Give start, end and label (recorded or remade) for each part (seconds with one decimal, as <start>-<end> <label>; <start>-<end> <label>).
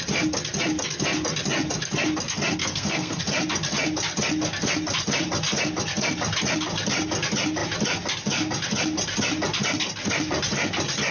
0.0-2.6 recorded; 2.6-3.2 remade; 3.2-11.1 recorded